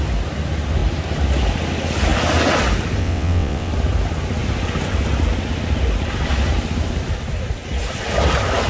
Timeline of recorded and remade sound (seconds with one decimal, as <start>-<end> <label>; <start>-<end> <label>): 0.0-3.0 recorded; 3.0-3.7 remade; 3.7-8.7 recorded

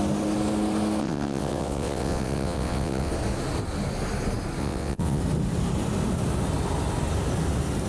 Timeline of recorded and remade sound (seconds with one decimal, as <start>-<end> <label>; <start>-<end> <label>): 0.0-1.0 recorded; 1.0-3.1 remade; 3.1-4.6 recorded; 4.6-5.2 remade; 5.2-7.9 recorded

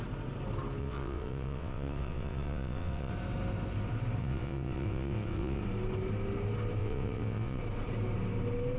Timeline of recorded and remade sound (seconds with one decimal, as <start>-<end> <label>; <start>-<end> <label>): 0.0-0.8 recorded; 0.8-3.1 remade; 3.1-4.2 recorded; 4.2-5.6 remade; 5.6-6.8 recorded; 6.8-7.6 remade; 7.6-8.8 recorded

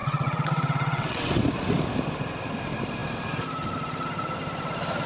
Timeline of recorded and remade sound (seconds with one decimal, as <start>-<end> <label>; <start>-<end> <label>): 0.0-1.3 remade; 1.3-5.1 recorded

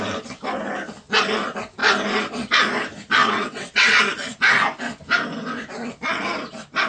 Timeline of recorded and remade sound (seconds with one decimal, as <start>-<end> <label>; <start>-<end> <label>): 0.0-3.2 recorded; 3.2-3.9 remade; 3.9-6.9 recorded

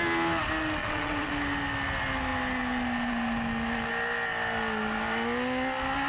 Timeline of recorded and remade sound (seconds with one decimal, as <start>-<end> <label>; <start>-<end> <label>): 0.0-0.8 recorded; 0.8-1.3 remade; 1.3-6.1 recorded